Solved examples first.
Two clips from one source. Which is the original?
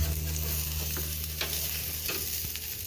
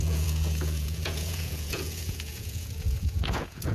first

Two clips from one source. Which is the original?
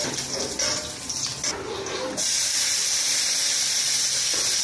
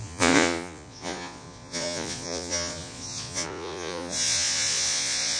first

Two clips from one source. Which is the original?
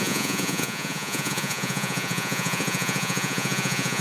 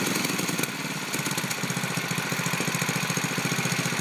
second